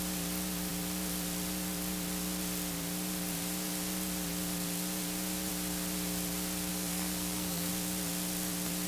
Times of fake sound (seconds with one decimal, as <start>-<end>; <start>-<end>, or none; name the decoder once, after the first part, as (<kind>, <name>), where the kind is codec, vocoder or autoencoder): 6.7-7.7 (codec, SNAC)